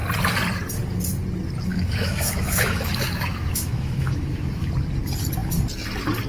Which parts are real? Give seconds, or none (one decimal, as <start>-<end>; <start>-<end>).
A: 0.0-1.7; 4.7-6.3